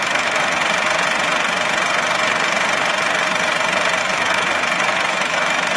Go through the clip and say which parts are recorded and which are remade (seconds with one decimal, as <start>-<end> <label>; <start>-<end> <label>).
0.0-0.6 remade; 0.6-4.0 recorded; 4.0-5.8 remade